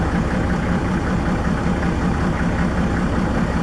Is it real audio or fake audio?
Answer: fake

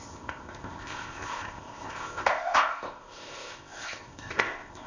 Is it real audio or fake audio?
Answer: fake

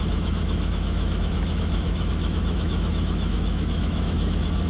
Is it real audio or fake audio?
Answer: fake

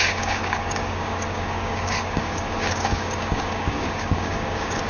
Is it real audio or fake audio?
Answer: fake